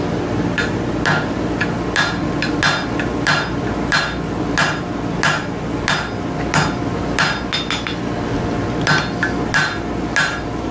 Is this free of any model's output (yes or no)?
yes